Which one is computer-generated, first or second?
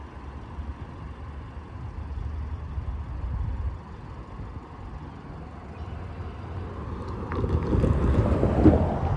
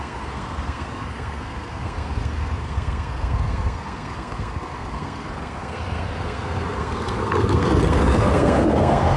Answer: second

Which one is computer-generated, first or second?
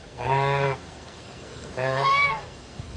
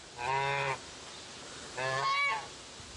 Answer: first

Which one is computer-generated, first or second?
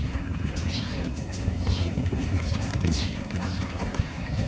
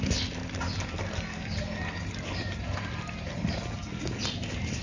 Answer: first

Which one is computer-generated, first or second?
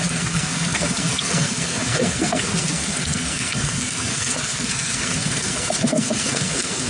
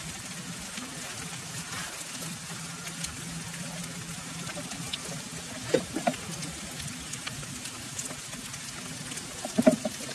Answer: first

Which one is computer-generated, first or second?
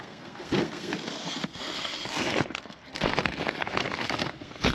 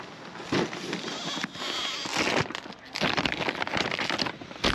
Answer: first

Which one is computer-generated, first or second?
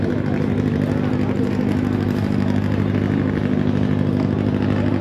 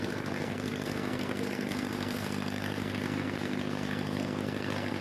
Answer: second